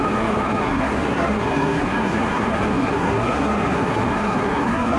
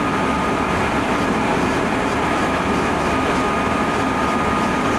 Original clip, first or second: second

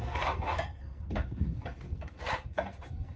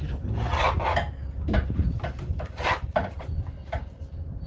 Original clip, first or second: second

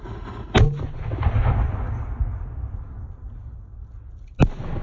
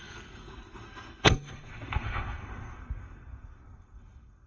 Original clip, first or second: first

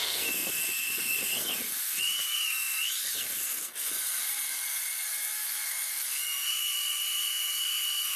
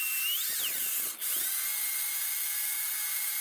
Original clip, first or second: second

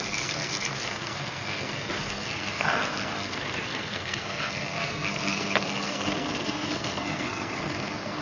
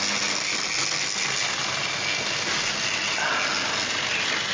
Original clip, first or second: second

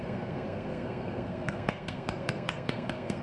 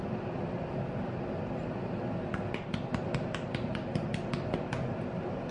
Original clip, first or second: second